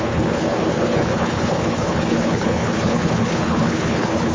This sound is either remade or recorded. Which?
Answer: remade